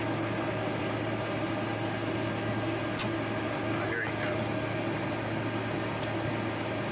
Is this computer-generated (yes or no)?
no